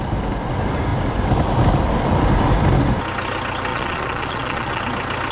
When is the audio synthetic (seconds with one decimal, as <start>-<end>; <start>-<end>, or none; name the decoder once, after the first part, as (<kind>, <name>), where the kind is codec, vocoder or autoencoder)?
3.7-4.8 (vocoder, Vocos)